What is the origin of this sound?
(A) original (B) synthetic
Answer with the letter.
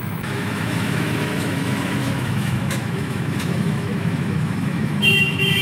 B